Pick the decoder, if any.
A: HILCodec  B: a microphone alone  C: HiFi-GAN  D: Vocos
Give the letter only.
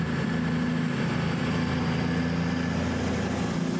B